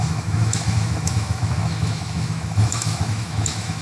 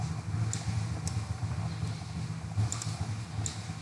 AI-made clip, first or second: first